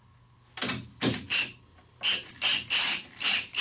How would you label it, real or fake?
real